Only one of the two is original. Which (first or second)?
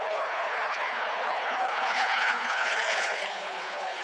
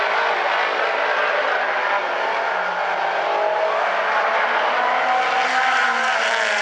second